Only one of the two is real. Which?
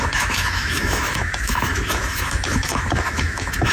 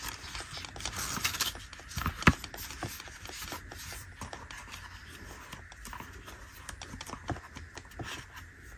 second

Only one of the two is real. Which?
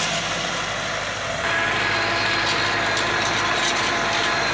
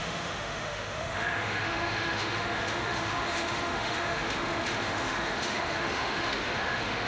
first